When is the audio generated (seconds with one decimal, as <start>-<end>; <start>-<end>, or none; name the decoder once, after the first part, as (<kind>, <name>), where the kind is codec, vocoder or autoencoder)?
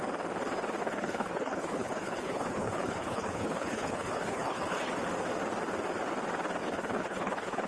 0.8-4.9 (codec, HILCodec); 6.6-7.7